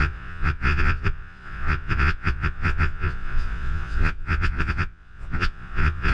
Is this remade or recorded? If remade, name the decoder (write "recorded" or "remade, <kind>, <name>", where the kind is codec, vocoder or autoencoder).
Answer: remade, vocoder, Vocos